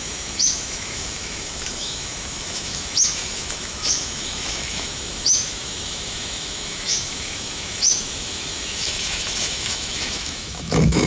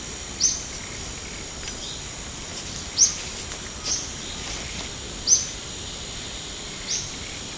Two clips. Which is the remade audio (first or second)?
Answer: first